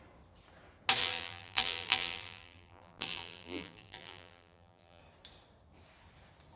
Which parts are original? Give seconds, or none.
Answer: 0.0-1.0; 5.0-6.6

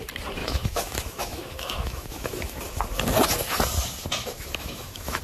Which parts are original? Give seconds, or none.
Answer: 0.0-0.4; 2.6-4.2

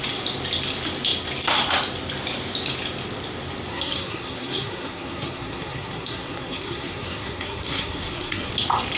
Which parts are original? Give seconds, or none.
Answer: 0.0-3.7; 8.5-9.0

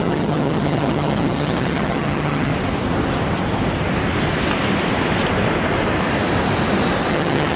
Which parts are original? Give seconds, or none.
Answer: 2.5-7.1